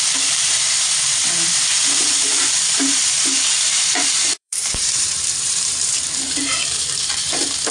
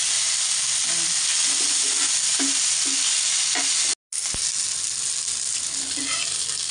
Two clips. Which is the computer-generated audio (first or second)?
first